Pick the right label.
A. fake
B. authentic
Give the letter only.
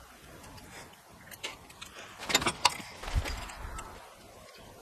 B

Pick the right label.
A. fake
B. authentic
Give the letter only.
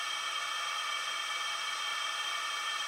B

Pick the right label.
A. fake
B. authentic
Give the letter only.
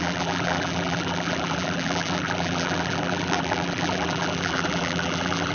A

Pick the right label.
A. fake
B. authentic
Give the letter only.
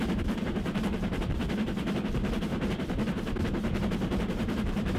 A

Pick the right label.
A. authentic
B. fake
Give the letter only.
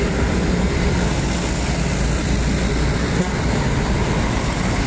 A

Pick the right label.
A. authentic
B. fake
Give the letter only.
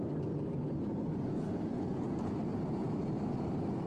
A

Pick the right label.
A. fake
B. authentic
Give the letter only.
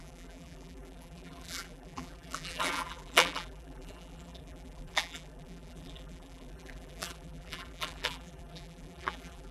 A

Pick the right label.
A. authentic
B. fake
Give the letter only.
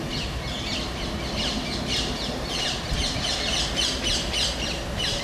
A